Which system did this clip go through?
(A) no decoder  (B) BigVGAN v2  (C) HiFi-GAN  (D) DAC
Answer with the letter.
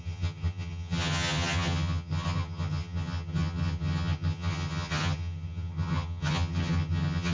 C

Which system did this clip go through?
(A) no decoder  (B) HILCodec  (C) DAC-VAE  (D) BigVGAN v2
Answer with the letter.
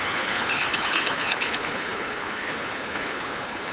B